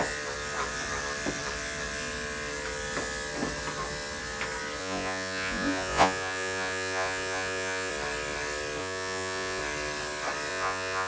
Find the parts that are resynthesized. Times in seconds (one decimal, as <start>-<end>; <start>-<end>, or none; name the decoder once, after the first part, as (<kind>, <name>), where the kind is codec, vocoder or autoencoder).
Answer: 4.8-7.9 (vocoder, Vocos); 8.8-9.6; 10.5-11.1